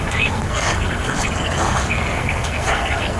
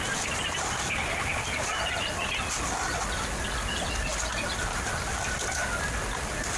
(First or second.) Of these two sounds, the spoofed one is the first